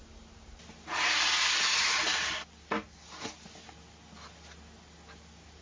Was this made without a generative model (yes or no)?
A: yes